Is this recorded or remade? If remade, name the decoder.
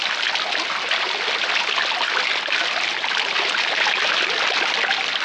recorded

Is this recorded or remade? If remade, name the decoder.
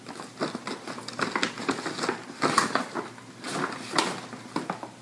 recorded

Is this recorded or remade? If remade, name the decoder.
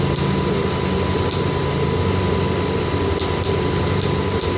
recorded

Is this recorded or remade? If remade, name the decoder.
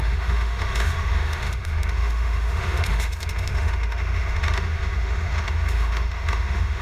remade, autoencoder, DAC-VAE